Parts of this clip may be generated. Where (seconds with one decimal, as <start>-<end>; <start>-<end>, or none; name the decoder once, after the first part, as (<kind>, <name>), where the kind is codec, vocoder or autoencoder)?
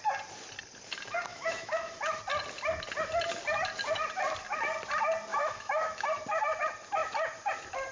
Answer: 1.3-2.2 (autoencoder, DAC-VAE); 5.3-6.1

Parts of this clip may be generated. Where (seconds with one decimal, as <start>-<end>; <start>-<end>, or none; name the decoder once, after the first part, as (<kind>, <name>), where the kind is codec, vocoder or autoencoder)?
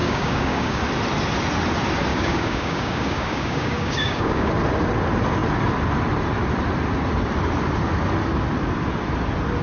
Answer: 0.0-0.8 (codec, DAC); 2.1-4.5